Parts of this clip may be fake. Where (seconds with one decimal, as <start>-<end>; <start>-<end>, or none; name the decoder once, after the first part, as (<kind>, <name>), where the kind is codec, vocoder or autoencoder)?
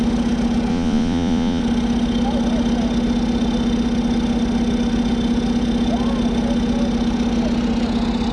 0.7-1.6 (vocoder, Vocos)